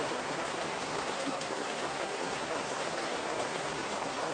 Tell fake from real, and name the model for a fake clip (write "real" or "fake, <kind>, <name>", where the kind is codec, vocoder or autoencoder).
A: fake, codec, SNAC